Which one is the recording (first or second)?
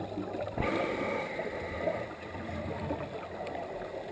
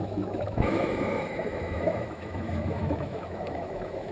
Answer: first